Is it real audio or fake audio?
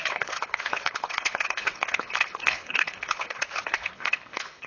fake